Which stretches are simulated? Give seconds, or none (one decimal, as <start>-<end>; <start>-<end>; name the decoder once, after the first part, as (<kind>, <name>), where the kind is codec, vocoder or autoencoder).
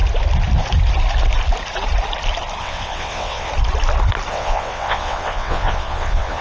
2.6-3.5 (vocoder, WaveNeXt); 4.3-6.4